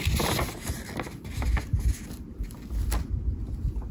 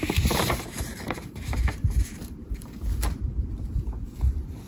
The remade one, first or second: second